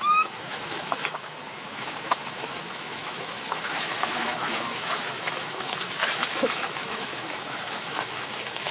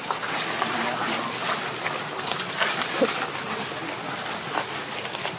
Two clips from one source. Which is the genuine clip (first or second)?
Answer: second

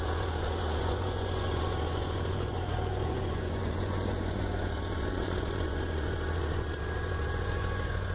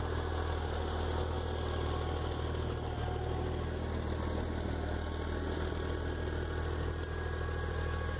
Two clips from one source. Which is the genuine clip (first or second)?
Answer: second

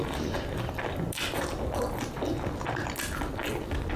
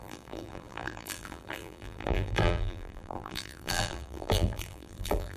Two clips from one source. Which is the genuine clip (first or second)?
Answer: first